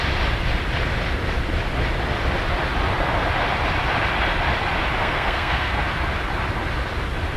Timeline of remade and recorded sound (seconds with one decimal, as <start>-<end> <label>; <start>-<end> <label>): 0.0-5.0 recorded; 5.0-5.8 remade; 5.8-7.4 recorded